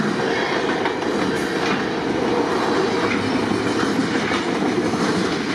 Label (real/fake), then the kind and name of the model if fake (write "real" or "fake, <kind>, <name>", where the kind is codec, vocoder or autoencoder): real